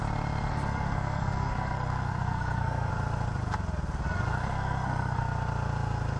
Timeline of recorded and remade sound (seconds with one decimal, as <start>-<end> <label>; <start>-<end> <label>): 0.0-0.5 recorded; 0.5-2.9 remade; 2.9-4.4 recorded; 4.4-5.2 remade; 5.2-6.2 recorded